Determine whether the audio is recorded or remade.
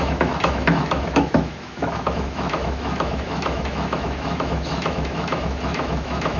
remade